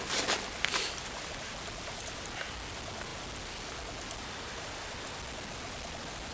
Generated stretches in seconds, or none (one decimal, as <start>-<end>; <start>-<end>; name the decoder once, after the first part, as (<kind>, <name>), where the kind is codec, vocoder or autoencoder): none